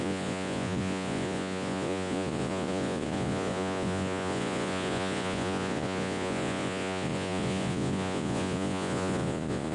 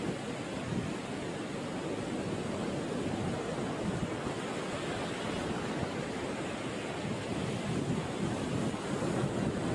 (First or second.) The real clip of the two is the second